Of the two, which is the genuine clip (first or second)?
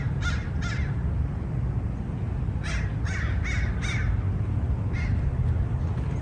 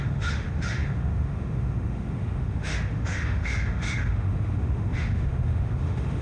first